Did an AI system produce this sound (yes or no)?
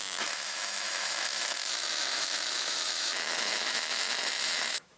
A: yes